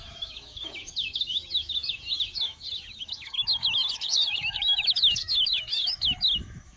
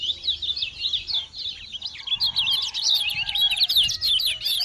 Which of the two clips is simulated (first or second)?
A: first